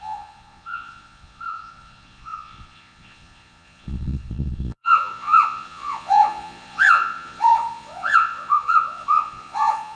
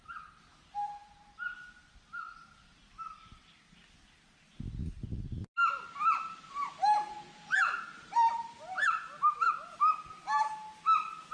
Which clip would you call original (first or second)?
second